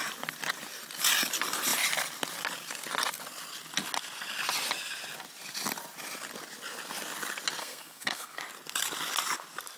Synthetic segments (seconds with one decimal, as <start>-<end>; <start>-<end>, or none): 7.6-8.4